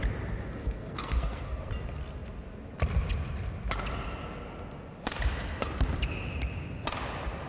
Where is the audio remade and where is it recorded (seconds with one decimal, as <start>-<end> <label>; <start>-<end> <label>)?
0.0-0.6 recorded; 0.6-1.7 remade; 1.7-7.5 recorded